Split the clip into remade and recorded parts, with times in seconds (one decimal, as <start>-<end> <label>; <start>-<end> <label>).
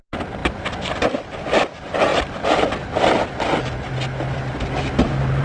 0.0-5.4 recorded